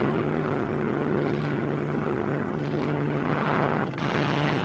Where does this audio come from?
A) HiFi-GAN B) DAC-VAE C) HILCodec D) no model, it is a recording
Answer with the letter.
A